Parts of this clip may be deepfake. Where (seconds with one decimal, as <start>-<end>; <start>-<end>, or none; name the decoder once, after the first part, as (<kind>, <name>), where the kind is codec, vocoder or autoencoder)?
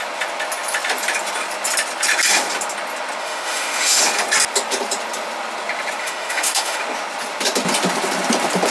3.2-4.0 (autoencoder, DAC-VAE); 6.0-6.8